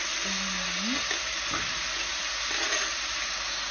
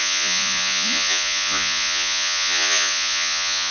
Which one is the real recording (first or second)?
first